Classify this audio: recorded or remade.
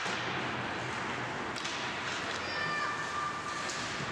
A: recorded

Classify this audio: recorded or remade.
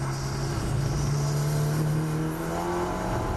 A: recorded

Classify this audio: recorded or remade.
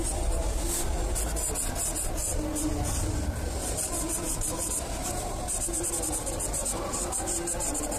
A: recorded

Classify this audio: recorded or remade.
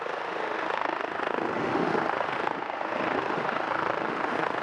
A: remade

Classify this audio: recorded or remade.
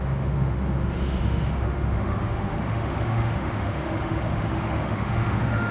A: remade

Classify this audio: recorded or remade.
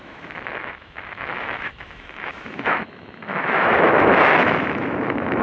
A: remade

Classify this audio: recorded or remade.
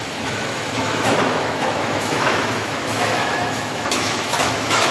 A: remade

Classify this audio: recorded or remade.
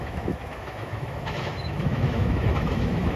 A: remade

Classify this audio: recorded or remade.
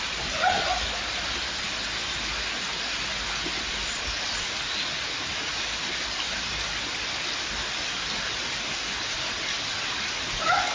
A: recorded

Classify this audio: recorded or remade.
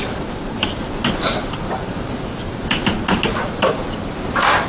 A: recorded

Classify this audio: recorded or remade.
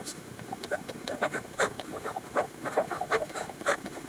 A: remade